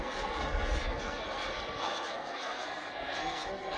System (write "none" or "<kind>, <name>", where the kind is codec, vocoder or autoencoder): codec, SNAC